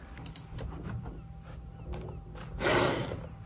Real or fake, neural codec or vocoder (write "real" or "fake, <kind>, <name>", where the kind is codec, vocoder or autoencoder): real